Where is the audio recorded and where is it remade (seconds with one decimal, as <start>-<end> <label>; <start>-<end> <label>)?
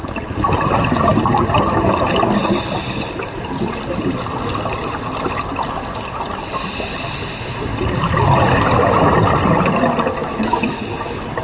0.0-10.2 recorded; 10.2-10.8 remade; 10.8-11.4 recorded